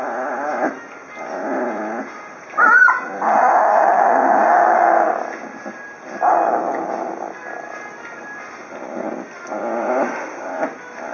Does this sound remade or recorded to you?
recorded